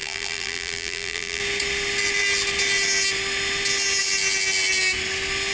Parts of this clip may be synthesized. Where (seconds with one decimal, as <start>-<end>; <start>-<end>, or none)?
0.0-1.4